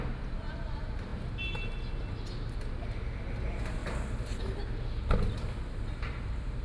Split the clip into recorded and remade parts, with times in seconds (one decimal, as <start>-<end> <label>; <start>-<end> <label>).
0.0-6.6 recorded